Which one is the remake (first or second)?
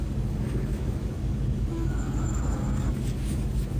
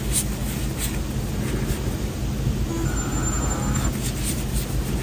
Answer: first